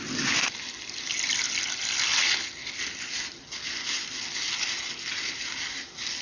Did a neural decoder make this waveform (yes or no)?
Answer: no